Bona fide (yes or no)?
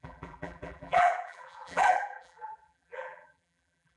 no